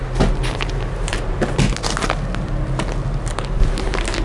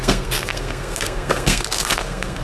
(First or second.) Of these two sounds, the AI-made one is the second